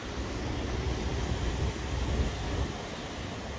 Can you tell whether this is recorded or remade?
recorded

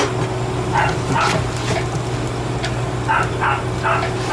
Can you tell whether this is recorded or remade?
recorded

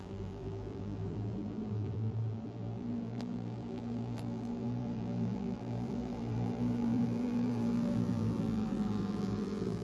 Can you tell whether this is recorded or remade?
remade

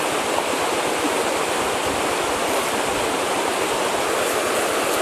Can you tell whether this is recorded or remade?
recorded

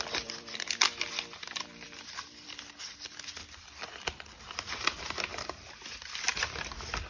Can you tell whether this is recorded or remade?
remade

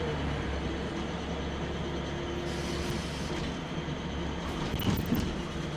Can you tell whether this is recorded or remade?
recorded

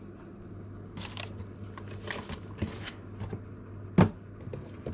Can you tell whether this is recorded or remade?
recorded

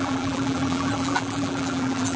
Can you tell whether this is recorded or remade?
remade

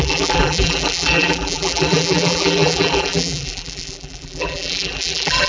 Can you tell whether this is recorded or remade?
remade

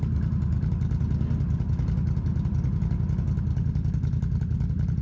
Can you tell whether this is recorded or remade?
recorded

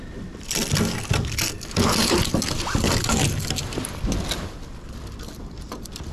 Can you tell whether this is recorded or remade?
recorded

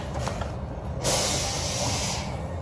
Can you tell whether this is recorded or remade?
recorded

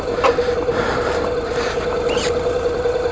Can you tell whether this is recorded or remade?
recorded